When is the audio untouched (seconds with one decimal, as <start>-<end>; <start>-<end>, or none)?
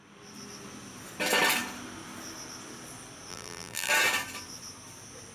0.0-3.3; 3.9-5.3